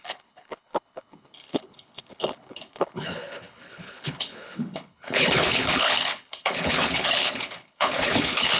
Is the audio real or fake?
fake